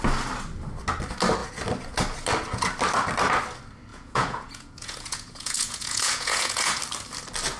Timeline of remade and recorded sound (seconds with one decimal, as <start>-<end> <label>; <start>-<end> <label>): 0.0-3.9 recorded; 3.9-6.8 remade; 6.8-7.6 recorded